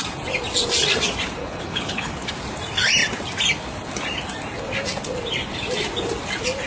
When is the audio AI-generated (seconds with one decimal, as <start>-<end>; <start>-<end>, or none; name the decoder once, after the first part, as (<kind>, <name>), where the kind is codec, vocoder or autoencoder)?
1.4-2.3 (codec, HILCodec)